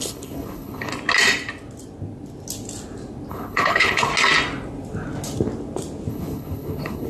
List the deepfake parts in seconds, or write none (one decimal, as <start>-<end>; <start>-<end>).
0.0-0.9; 3.3-4.1; 6.1-7.1